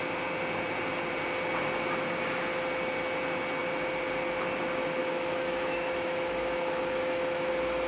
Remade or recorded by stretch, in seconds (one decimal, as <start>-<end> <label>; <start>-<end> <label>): 0.0-5.0 recorded; 5.0-7.5 remade; 7.5-7.9 recorded